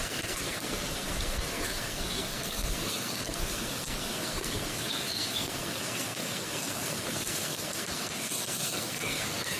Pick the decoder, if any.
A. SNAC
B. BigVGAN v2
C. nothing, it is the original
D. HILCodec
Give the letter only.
A